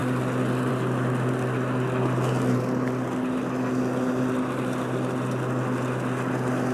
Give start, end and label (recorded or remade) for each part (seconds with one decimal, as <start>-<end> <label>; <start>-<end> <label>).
0.0-6.7 recorded